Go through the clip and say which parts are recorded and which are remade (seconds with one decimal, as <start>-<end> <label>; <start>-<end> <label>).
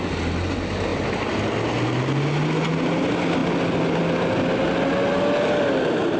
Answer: 0.0-6.2 recorded